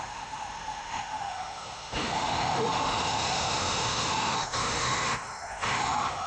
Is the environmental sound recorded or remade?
remade